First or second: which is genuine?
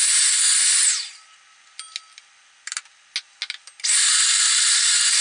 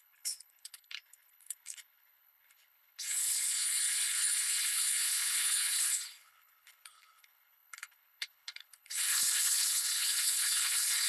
first